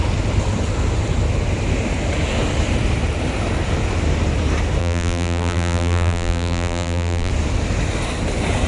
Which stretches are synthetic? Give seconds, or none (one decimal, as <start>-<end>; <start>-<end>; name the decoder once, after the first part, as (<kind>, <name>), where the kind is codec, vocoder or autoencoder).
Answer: 4.8-7.3 (vocoder, BigVGAN v2)